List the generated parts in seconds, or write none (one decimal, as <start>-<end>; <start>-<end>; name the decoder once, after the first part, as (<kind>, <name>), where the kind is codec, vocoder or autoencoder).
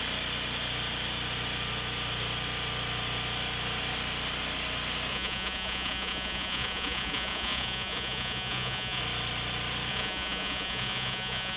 5.1-9.0 (vocoder, Vocos); 9.9-11.6